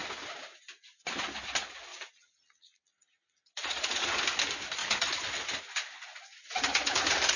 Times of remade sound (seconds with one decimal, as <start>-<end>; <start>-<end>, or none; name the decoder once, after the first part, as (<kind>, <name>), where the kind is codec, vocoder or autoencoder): 1.9-4.2 (vocoder, Vocos)